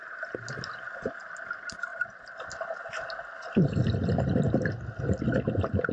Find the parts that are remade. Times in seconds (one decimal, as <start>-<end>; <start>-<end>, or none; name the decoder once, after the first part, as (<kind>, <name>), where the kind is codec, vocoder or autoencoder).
none